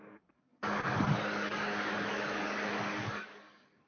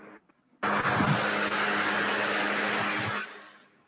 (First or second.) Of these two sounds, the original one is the second